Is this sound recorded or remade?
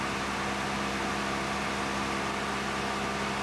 recorded